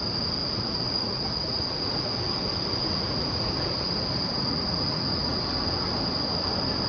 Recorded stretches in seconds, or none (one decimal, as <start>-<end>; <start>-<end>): 0.0-0.4; 2.0-2.8; 3.5-4.3; 5.4-6.9